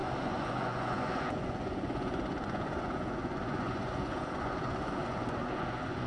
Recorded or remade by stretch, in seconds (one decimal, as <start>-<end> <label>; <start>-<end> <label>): 0.0-6.1 remade